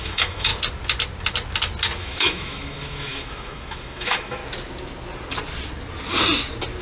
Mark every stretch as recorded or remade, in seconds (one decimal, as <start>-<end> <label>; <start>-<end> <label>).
0.0-0.5 remade; 0.5-2.0 recorded; 2.0-4.4 remade; 4.4-6.8 recorded